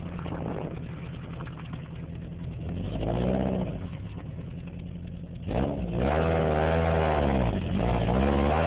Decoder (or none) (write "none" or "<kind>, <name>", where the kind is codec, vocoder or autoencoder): none